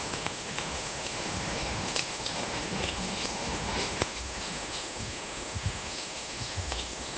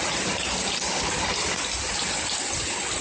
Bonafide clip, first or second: second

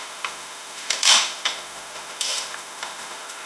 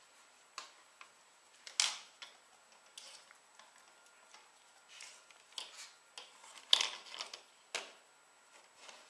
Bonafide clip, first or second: second